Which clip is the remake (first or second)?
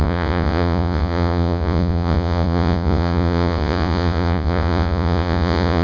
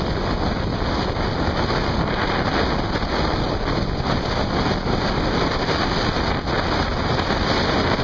first